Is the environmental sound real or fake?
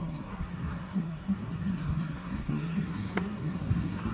fake